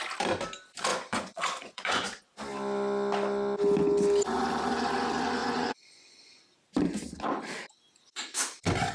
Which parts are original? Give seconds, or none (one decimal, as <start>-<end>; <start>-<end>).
0.0-0.9; 2.2-5.4; 6.4-8.9

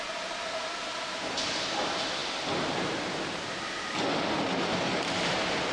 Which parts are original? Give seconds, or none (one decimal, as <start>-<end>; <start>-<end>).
0.0-5.7

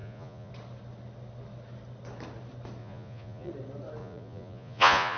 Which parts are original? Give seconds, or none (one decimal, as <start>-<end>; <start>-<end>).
0.5-2.8; 3.5-4.0

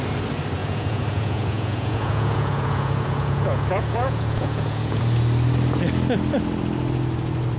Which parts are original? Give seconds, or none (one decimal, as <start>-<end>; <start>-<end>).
0.0-0.6; 5.0-7.6

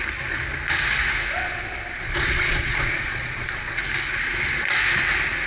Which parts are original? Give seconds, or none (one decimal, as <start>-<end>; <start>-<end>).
0.0-1.4; 3.8-5.5

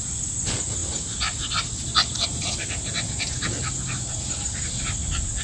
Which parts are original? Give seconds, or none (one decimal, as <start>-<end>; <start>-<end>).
0.0-5.4